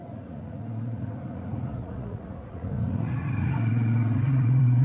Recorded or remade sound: remade